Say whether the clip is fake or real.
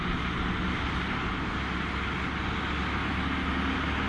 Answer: real